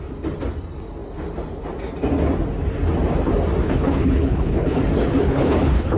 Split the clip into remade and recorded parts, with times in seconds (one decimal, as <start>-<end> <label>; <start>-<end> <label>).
0.0-3.6 recorded; 3.6-4.8 remade; 4.8-5.3 recorded; 5.3-6.0 remade